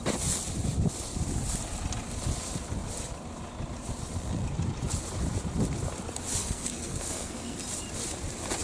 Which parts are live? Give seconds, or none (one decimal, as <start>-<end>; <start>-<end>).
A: 0.0-6.4; 7.6-8.6